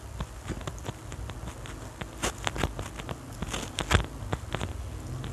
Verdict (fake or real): real